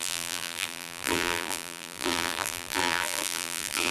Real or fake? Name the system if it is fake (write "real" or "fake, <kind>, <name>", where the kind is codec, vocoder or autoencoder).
fake, vocoder, BigVGAN v2